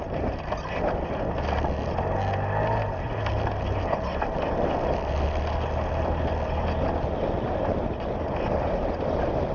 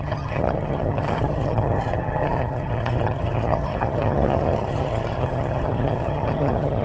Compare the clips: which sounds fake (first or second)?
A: second